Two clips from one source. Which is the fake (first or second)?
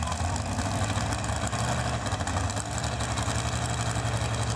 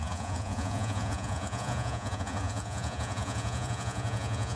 second